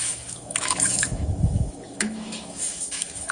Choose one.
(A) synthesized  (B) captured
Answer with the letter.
A